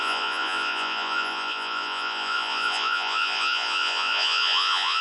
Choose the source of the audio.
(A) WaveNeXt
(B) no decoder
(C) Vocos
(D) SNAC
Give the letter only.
C